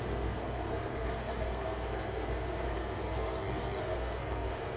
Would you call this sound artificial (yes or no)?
yes